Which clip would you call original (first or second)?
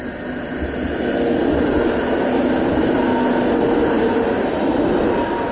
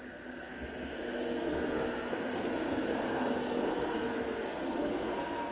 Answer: first